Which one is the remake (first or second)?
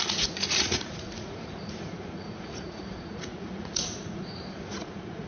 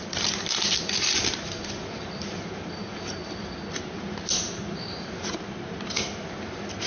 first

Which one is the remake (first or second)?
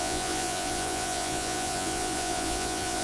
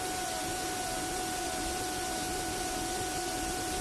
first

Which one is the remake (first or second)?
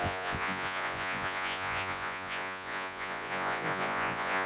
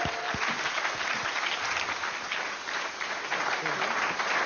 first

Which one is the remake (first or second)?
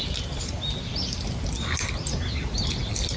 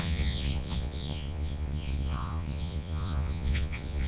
second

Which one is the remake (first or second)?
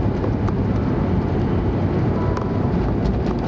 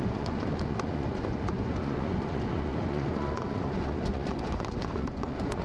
second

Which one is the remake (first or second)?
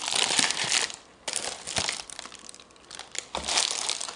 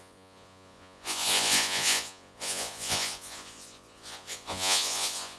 second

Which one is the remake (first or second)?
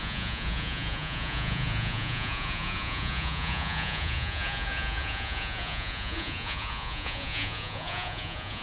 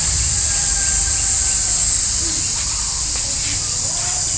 first